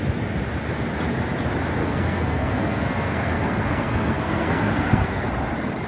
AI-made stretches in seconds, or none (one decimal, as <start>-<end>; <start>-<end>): 1.8-5.3

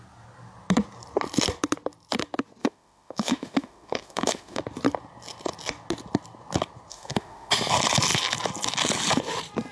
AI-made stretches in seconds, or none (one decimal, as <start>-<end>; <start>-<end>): 2.6-4.6; 6.9-7.5

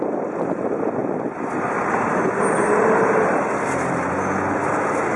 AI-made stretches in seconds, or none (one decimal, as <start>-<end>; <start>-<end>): 1.0-4.1

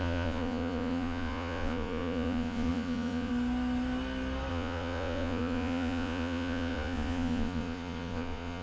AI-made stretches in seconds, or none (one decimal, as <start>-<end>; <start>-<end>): 0.0-3.3; 4.5-8.6

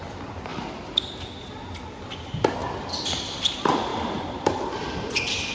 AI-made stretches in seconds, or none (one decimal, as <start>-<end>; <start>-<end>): 0.5-1.1; 2.6-3.4; 3.9-5.5

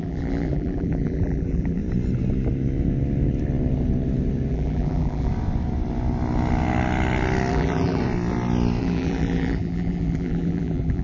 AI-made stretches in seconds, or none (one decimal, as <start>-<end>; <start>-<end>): 0.0-1.8; 4.5-5.3; 7.5-8.0; 8.8-11.0